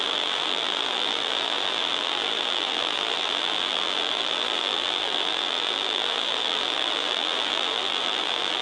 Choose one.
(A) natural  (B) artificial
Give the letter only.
B